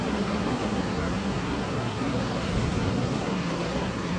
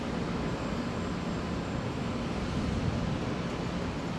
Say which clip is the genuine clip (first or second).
second